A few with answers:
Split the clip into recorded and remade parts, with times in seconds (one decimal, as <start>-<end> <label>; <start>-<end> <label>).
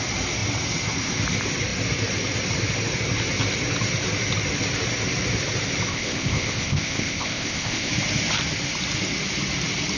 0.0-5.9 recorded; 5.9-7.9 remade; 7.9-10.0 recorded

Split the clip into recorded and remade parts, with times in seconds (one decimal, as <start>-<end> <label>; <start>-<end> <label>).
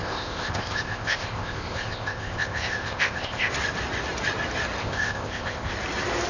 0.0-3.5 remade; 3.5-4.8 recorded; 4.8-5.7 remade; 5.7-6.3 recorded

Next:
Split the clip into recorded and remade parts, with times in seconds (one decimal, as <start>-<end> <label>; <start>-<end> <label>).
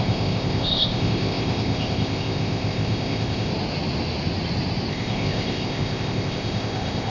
0.0-3.5 remade; 3.5-4.9 recorded; 4.9-7.1 remade